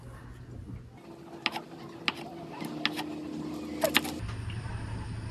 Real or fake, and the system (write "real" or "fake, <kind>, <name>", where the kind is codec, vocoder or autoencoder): real